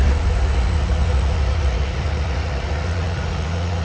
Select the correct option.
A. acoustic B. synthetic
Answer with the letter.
B